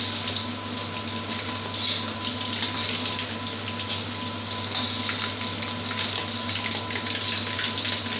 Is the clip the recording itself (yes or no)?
yes